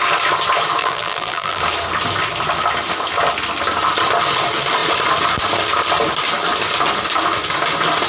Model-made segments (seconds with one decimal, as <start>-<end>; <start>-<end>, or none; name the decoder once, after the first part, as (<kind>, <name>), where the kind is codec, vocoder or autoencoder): 0.8-1.6 (vocoder, BigVGAN v2)